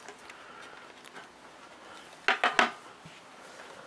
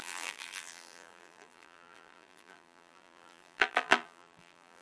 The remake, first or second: second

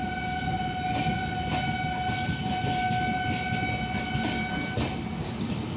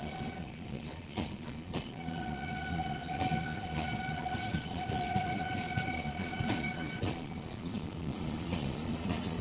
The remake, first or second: second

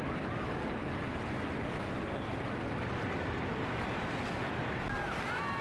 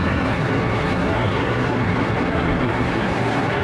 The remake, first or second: second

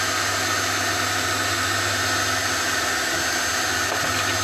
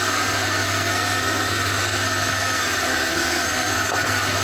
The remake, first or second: second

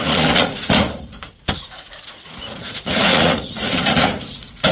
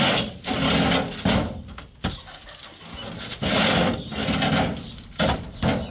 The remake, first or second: first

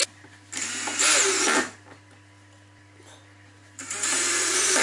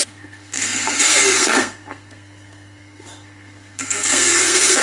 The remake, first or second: second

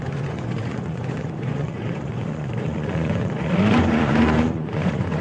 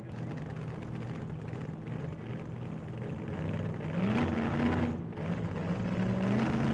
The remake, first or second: first